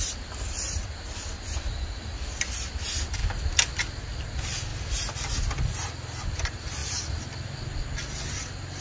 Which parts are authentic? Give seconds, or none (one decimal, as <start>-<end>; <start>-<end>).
0.0-8.8